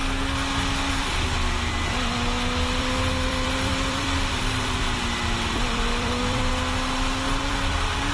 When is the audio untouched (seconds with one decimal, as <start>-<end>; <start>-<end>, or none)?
0.0-0.9; 1.7-2.8; 6.5-7.3